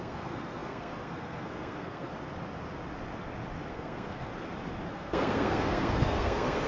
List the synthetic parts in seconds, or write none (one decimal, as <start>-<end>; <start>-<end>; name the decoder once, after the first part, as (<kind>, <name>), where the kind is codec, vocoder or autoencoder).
0.0-2.1 (codec, SNAC); 3.7-4.3; 4.9-6.7